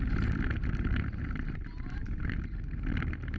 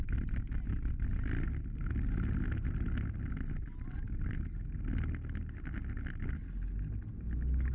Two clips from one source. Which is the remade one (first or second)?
first